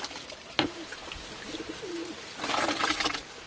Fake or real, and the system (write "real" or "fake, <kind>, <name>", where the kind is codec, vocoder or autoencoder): real